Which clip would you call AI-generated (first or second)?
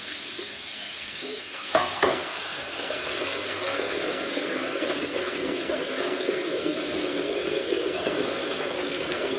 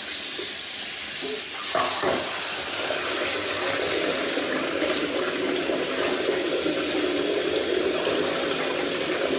first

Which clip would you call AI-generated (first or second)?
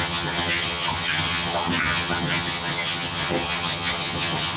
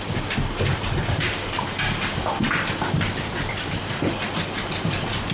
first